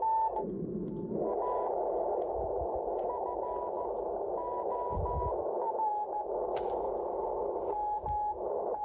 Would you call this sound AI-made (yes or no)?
no